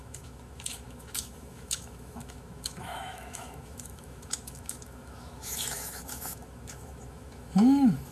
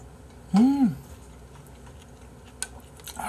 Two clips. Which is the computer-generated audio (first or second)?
first